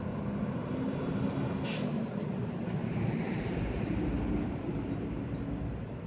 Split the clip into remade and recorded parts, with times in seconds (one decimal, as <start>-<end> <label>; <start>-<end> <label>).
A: 0.0-0.6 recorded; 0.6-1.1 remade; 1.1-2.8 recorded; 2.8-6.1 remade